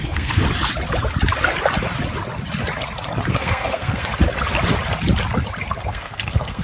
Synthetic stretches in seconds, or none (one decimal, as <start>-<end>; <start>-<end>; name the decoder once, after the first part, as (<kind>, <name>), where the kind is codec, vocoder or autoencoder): 0.0-0.4 (codec, SNAC); 3.3-4.1; 5.8-6.6